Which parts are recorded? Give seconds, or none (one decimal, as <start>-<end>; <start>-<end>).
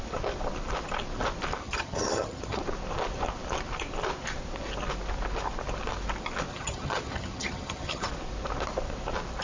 0.0-1.6; 2.6-6.5; 8.1-9.4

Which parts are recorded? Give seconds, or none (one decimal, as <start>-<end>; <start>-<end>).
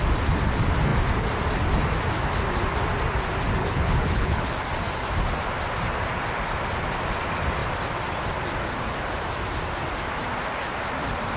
0.0-3.6; 4.4-11.4